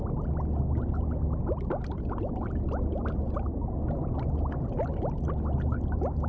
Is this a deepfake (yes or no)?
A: no